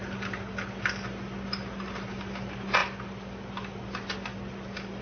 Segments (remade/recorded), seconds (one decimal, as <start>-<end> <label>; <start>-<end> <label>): 0.0-5.0 recorded